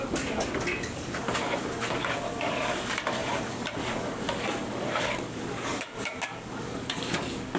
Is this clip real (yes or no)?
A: no